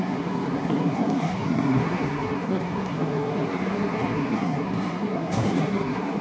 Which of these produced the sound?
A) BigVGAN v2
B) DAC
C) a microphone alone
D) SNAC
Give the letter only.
D